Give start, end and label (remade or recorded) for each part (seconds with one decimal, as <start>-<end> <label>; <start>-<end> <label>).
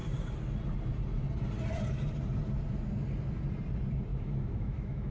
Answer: 0.0-4.1 recorded; 4.1-5.1 remade